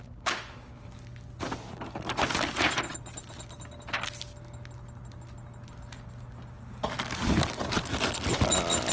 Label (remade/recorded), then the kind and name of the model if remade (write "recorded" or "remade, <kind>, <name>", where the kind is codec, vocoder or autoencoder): recorded